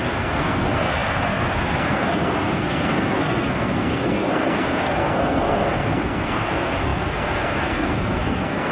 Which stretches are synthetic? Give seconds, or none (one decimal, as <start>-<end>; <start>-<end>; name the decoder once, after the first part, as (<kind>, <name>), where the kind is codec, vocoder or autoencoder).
0.0-8.7 (codec, SNAC)